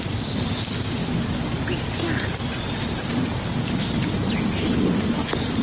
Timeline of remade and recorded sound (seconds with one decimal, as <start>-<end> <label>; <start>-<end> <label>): 0.0-3.3 recorded; 3.3-4.1 remade; 4.1-5.6 recorded